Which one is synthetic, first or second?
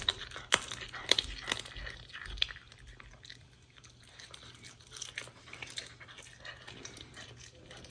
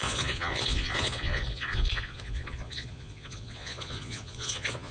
second